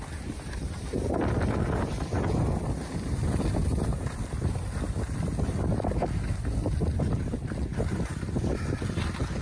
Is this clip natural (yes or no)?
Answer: yes